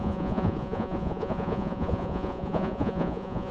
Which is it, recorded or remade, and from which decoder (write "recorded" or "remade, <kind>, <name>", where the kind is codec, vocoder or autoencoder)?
remade, vocoder, Vocos